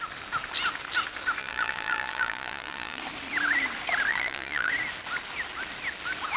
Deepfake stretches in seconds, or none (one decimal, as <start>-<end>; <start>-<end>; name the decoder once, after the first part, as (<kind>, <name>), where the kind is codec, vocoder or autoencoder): 1.4-3.0 (vocoder, Vocos); 4.1-4.7